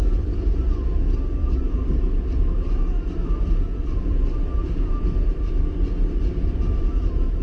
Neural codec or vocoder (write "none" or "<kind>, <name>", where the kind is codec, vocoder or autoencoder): none